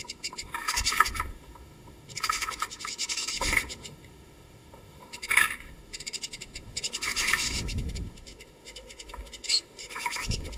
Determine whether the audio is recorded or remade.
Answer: remade